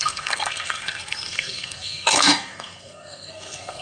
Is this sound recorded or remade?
remade